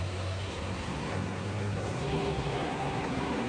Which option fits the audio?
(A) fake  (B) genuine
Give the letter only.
A